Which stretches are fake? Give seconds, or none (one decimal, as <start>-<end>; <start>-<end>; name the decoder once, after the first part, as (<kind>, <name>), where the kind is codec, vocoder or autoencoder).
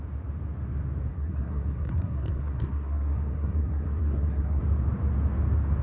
1.1-4.6 (codec, SNAC)